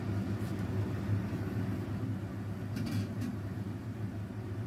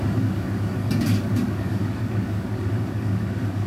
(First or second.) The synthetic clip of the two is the second